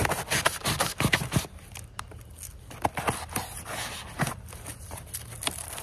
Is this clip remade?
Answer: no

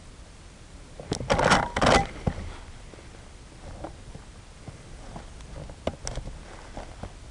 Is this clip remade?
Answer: no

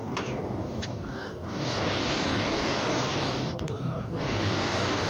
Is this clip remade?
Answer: yes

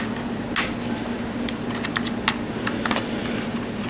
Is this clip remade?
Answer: no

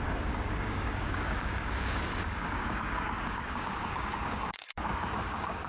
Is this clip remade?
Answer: yes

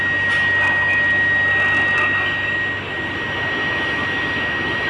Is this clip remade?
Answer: no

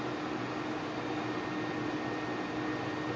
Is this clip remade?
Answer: no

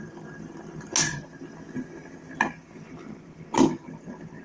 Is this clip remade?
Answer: no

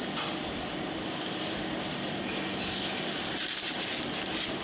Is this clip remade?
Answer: no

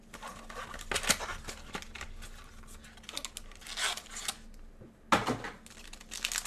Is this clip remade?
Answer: no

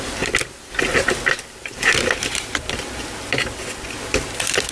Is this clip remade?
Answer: no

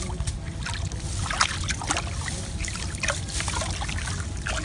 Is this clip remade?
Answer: no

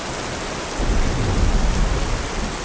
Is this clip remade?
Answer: no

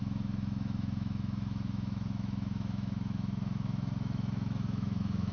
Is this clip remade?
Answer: yes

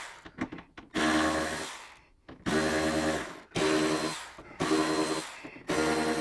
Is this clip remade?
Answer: no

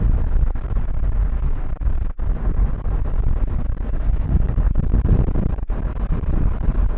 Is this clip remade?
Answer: no